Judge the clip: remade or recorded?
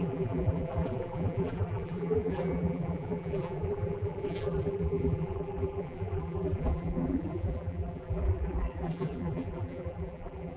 remade